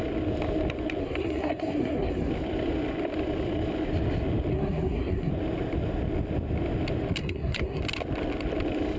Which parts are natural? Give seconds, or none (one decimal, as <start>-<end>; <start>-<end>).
0.0-1.0; 2.3-4.5; 5.3-7.2; 7.8-9.0